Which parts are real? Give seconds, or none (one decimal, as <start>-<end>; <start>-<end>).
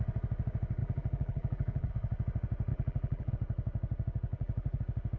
0.0-0.8; 1.9-2.7; 3.3-4.3; 4.8-5.2